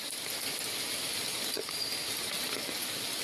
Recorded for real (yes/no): yes